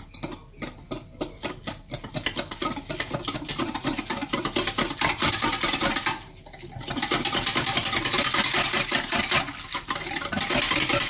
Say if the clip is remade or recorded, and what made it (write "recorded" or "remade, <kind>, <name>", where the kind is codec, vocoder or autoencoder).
recorded